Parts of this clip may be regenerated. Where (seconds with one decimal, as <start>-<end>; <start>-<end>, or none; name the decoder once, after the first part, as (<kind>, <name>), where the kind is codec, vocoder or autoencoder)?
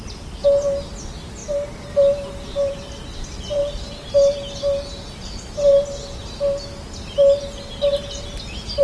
0.0-0.4 (vocoder, BigVGAN v2); 0.9-1.4; 2.3-3.6